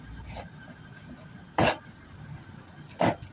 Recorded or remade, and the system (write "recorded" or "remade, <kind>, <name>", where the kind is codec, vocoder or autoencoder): recorded